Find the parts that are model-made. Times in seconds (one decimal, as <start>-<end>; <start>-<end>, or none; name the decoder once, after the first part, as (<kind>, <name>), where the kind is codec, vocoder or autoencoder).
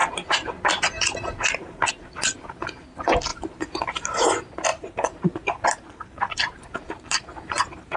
0.0-1.9 (vocoder, BigVGAN v2); 3.3-4.2; 4.7-8.0